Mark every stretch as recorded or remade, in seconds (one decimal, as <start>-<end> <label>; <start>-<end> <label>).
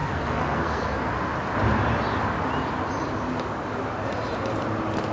0.0-1.1 remade; 1.1-5.1 recorded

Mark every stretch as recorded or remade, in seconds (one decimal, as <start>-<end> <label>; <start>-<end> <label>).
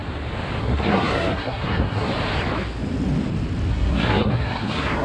0.0-0.6 recorded; 0.6-2.1 remade; 2.1-3.7 recorded; 3.7-5.0 remade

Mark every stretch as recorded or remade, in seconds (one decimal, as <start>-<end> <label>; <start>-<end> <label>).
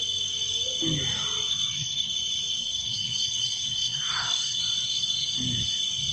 0.0-1.5 recorded; 1.5-2.1 remade; 2.1-2.6 recorded; 2.6-4.6 remade; 4.6-6.1 recorded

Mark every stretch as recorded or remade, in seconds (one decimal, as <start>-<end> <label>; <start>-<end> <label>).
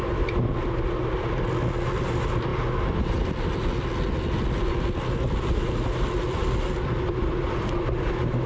0.0-8.5 recorded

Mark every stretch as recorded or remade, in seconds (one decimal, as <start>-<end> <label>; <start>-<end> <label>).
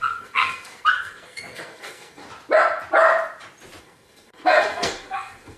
0.0-2.2 remade; 2.2-3.8 recorded; 3.8-5.6 remade